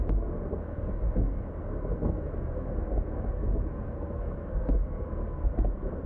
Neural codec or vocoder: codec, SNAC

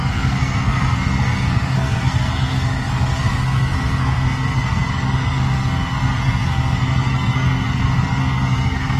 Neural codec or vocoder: codec, SNAC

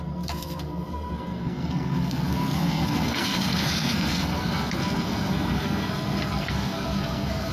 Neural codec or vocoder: codec, SNAC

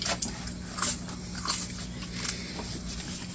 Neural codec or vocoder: none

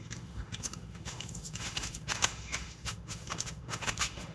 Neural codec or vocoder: autoencoder, DAC-VAE